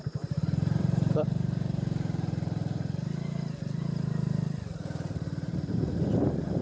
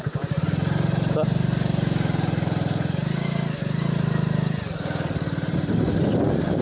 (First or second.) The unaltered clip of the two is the second